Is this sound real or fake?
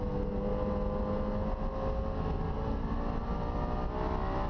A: real